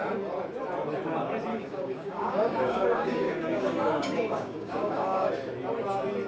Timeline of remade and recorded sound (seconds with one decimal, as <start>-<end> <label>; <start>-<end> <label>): 0.0-1.5 recorded; 1.5-5.3 remade; 5.3-6.3 recorded

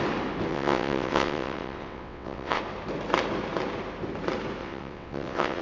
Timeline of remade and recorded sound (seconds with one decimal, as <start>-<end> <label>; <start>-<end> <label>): 0.0-0.5 recorded; 0.5-2.6 remade; 2.6-4.6 recorded; 4.6-5.6 remade